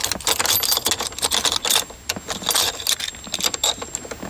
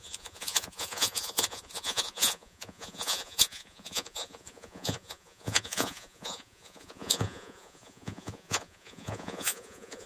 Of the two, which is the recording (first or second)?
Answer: first